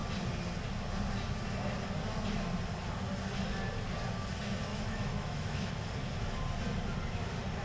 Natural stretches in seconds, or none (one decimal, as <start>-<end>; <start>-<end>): 0.0-4.7; 5.7-7.6